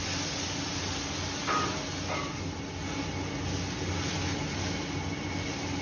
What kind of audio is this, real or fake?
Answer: real